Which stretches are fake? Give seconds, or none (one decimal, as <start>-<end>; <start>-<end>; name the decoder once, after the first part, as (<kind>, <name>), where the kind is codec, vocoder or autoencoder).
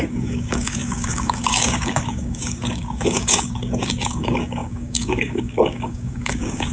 0.0-6.7 (codec, DAC)